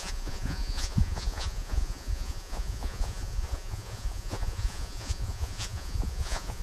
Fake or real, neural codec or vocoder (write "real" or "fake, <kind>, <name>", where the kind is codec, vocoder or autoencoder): fake, vocoder, Vocos